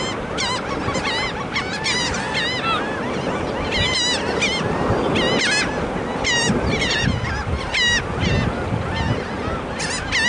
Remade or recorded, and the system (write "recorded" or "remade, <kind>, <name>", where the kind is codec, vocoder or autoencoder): recorded